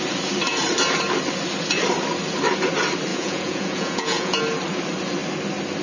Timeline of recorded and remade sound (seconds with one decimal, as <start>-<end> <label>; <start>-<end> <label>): 0.0-3.1 recorded; 3.1-4.4 remade; 4.4-5.8 recorded